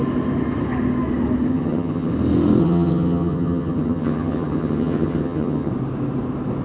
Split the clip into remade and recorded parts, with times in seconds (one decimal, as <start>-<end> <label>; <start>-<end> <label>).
0.0-1.5 recorded; 1.5-2.1 remade; 2.1-2.6 recorded; 2.6-5.7 remade; 5.7-6.6 recorded